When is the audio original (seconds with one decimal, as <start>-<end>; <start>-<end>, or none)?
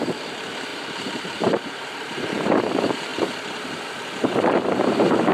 none